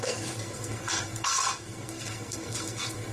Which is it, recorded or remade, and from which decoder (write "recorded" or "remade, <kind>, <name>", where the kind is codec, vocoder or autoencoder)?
remade, codec, SNAC